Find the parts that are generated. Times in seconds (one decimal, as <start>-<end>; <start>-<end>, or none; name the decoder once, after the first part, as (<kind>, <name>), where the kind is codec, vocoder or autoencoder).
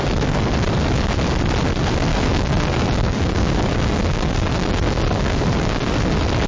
2.1-5.9 (codec, DAC)